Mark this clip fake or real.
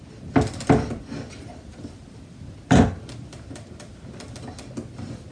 real